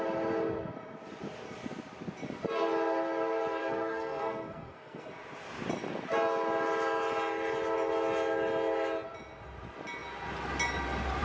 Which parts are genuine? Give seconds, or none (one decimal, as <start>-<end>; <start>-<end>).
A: 0.0-3.6; 5.1-11.2